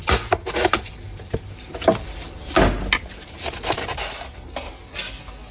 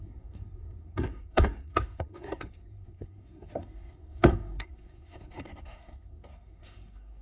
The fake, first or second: second